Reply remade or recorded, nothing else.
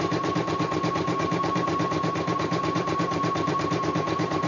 remade